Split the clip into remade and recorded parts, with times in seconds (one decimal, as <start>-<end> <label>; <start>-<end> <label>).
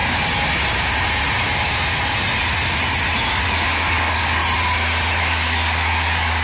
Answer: 0.0-3.3 recorded; 3.3-4.4 remade; 4.4-5.2 recorded; 5.2-6.4 remade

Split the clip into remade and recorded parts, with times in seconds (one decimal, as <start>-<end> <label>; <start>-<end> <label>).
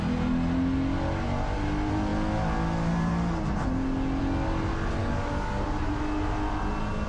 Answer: 0.0-5.0 recorded; 5.0-5.9 remade; 5.9-7.1 recorded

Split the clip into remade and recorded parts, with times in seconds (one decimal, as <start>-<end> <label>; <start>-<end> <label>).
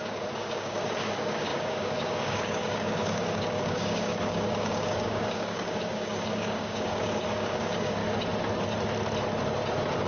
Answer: 0.0-8.0 remade; 8.0-10.1 recorded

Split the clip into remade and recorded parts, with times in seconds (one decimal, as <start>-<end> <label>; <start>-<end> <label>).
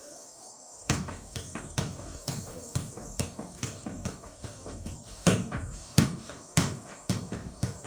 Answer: 0.0-7.9 remade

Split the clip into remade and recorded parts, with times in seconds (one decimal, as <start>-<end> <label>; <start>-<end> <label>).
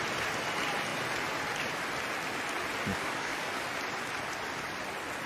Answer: 0.0-2.9 recorded; 2.9-3.6 remade; 3.6-5.3 recorded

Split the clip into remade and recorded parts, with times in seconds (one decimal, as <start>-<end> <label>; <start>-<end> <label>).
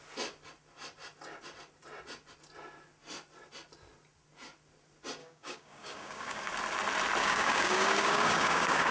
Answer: 0.0-5.2 recorded; 5.2-6.5 remade; 6.5-7.2 recorded; 7.2-8.9 remade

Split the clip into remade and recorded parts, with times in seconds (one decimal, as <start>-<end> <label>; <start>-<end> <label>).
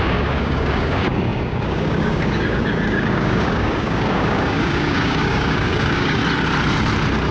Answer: 0.0-6.2 remade; 6.2-7.3 recorded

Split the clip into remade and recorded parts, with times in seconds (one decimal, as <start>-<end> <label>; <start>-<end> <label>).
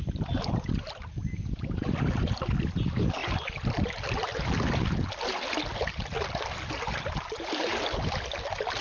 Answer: 0.0-8.8 recorded